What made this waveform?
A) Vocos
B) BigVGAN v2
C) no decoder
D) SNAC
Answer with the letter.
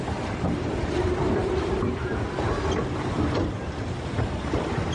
B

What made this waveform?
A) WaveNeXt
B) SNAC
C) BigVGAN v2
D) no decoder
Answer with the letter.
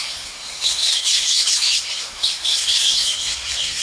B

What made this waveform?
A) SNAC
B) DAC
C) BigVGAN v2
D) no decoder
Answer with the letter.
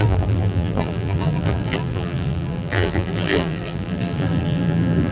C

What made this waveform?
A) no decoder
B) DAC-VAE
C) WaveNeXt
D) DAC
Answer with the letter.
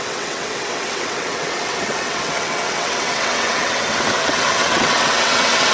C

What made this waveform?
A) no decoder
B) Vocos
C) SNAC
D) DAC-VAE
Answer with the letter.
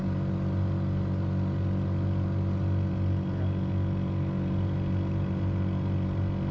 A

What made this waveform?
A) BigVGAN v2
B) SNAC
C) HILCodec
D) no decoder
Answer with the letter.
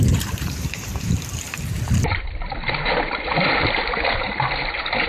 A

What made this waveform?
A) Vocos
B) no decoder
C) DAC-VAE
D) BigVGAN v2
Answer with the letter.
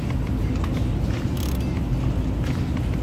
B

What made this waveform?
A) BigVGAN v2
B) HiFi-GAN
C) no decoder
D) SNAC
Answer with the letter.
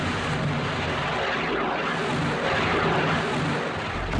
C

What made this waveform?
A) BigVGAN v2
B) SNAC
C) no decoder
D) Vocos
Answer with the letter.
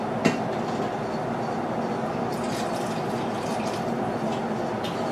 C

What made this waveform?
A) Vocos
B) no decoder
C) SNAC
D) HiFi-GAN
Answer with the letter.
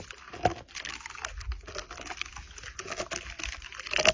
B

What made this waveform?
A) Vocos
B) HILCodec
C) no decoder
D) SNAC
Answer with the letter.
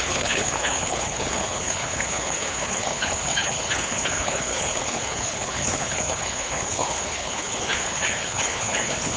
B